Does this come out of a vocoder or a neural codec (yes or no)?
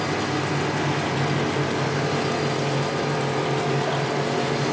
no